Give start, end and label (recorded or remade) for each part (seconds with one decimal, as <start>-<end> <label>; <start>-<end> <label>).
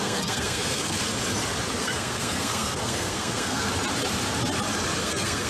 0.0-1.0 remade; 1.0-1.8 recorded; 1.8-3.7 remade; 3.7-5.0 recorded; 5.0-5.5 remade